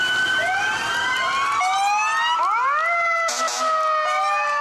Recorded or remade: recorded